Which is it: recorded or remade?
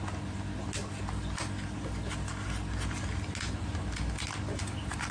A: recorded